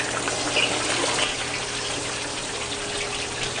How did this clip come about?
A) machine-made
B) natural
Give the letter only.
B